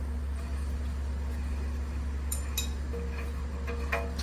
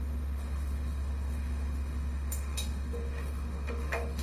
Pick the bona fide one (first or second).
first